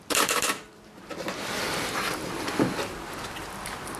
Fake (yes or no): no